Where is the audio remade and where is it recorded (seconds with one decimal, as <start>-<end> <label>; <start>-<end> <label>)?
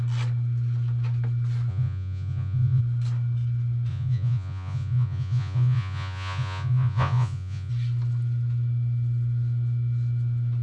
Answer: 0.0-1.7 recorded; 1.7-2.8 remade; 2.8-3.9 recorded; 3.9-7.7 remade; 7.7-10.6 recorded